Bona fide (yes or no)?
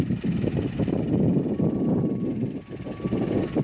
yes